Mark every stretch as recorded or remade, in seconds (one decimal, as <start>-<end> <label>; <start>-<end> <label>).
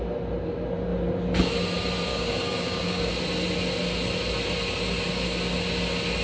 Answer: 0.0-2.1 recorded; 2.1-3.1 remade; 3.1-6.2 recorded